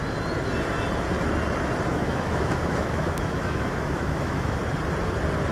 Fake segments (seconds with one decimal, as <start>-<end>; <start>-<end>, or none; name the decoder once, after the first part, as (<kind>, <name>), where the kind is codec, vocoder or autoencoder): 1.9-4.6 (autoencoder, DAC-VAE)